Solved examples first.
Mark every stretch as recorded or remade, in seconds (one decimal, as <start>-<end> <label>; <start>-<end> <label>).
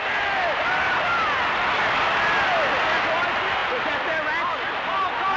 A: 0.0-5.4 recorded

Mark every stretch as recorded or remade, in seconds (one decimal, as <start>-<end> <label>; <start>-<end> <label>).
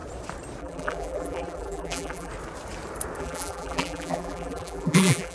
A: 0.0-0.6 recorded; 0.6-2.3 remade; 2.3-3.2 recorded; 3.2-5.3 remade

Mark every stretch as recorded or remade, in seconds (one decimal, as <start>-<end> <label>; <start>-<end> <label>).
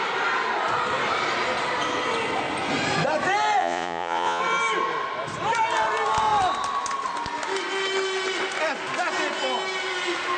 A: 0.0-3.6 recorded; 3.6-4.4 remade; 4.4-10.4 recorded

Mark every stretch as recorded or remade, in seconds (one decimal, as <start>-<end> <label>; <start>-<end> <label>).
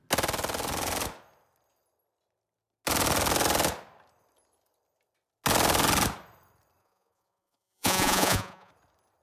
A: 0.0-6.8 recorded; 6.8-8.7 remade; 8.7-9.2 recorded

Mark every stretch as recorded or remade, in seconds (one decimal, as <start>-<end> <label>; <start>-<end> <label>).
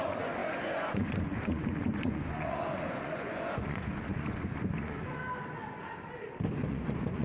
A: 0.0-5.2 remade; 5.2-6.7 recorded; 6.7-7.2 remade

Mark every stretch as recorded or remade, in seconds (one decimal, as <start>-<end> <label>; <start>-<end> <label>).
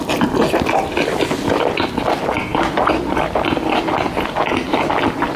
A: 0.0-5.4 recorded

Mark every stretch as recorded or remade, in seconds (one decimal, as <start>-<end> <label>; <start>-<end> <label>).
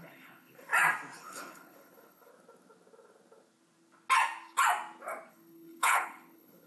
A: 0.0-0.7 remade; 0.7-1.2 recorded; 1.2-2.3 remade; 2.3-5.3 recorded; 5.3-6.7 remade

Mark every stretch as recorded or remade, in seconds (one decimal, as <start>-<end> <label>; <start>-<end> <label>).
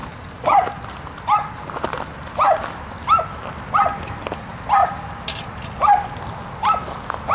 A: 0.0-7.3 recorded